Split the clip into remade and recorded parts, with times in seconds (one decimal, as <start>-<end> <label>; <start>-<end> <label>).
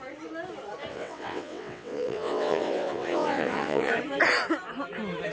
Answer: 0.0-0.9 recorded; 0.9-3.9 remade; 3.9-5.3 recorded